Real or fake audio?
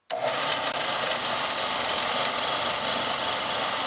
real